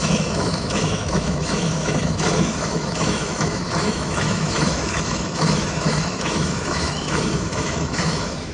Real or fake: fake